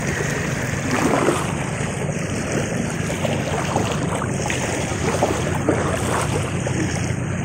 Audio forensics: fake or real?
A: fake